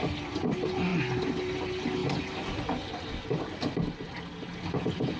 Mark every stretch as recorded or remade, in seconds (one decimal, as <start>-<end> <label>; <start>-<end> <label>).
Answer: 0.0-5.2 recorded